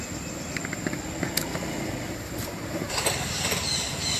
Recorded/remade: recorded